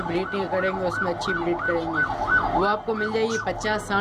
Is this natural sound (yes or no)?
yes